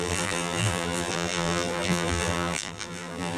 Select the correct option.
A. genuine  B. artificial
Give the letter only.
B